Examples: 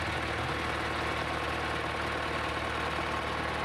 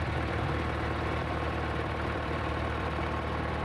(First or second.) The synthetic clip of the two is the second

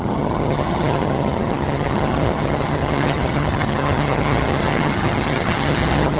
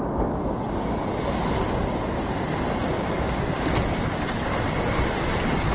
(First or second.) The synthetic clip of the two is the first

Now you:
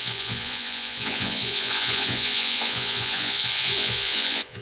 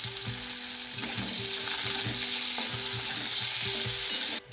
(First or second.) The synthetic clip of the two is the first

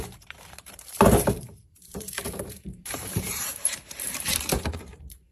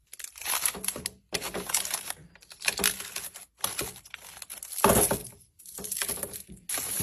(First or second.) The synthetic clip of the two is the first